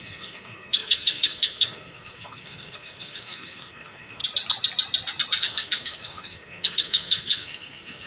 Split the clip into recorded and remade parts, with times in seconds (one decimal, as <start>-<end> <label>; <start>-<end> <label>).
0.0-4.2 remade; 4.2-5.4 recorded; 5.4-8.1 remade